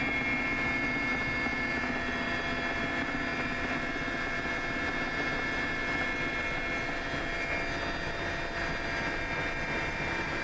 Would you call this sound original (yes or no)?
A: yes